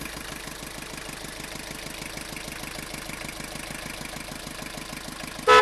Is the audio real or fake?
real